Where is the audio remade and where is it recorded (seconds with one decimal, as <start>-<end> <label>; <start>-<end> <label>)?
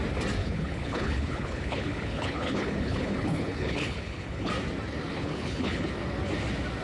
0.0-0.4 recorded; 0.4-4.5 remade; 4.5-5.1 recorded; 5.1-5.9 remade; 5.9-6.8 recorded